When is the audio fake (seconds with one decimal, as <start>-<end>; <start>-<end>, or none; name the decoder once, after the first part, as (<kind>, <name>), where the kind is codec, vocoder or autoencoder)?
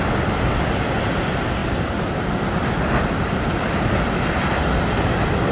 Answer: none